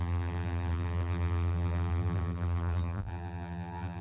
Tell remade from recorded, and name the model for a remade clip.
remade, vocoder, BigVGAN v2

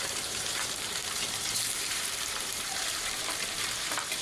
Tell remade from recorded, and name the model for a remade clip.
remade, vocoder, BigVGAN v2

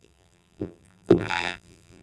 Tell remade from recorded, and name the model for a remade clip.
remade, vocoder, BigVGAN v2